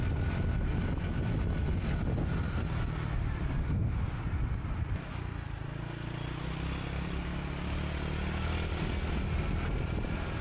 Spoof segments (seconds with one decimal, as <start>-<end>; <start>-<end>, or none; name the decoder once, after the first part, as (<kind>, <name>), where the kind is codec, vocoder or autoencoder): 3.6-4.2 (autoencoder, DAC-VAE)